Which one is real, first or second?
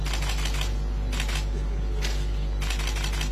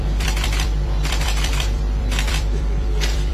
first